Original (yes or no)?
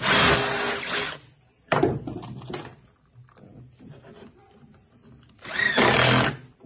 yes